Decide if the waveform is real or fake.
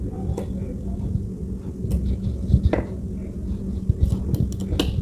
real